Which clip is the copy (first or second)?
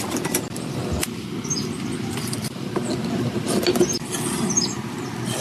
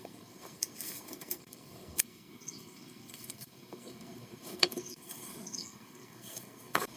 second